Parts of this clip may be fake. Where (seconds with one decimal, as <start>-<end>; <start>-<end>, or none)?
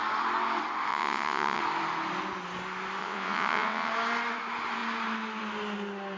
0.9-1.6; 3.0-3.9